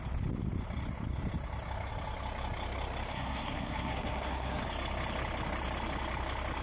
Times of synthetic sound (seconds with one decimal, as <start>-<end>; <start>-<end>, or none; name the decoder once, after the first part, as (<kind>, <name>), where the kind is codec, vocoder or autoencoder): 3.1-4.6 (codec, SNAC)